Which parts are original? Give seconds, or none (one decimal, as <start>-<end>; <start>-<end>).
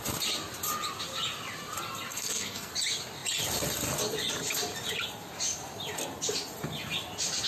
0.0-2.1; 2.7-7.5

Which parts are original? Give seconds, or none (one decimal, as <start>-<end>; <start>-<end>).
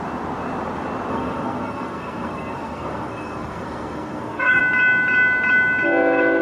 0.0-1.1; 4.6-6.4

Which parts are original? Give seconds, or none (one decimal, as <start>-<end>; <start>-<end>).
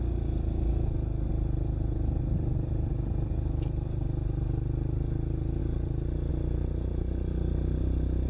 0.0-8.3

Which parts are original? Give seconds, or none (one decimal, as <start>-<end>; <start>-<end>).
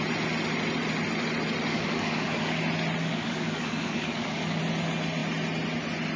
0.0-1.7; 2.6-3.0; 4.6-6.2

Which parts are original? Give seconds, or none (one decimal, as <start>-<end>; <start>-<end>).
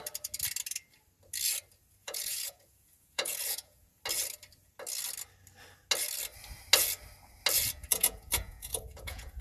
0.0-2.0; 4.0-7.9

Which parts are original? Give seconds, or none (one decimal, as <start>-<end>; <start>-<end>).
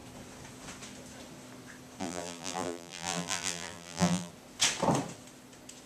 0.0-2.0; 4.3-5.9